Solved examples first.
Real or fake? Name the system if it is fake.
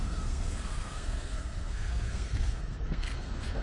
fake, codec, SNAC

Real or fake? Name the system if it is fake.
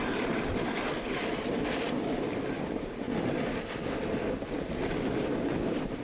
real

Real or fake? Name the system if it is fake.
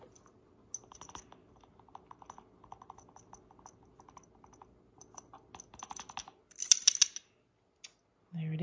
real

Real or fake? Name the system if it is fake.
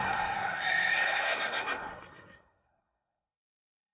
fake, codec, SNAC